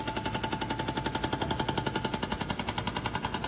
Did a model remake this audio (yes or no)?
no